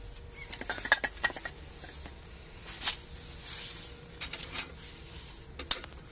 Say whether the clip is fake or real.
real